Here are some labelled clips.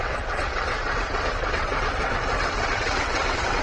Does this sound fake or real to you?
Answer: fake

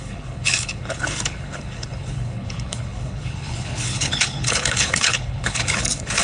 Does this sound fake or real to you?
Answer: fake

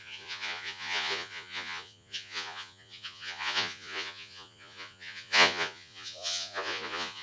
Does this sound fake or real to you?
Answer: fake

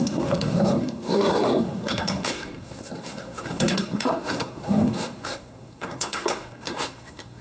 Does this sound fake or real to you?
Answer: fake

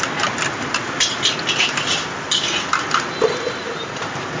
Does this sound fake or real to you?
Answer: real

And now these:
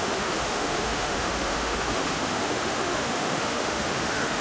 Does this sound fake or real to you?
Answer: fake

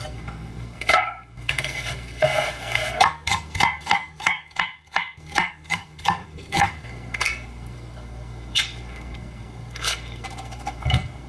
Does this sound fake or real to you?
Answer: fake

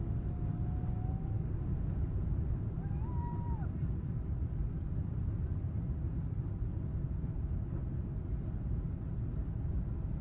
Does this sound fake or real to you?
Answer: real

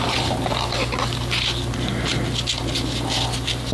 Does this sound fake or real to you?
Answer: real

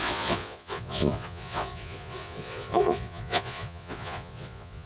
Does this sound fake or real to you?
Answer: fake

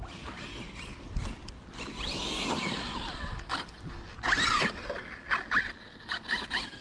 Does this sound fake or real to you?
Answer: real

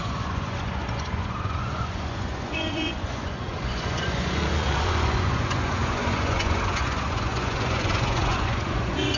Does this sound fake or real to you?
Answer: fake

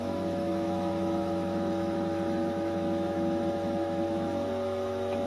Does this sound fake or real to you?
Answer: fake